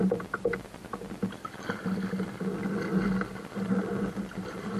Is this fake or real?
real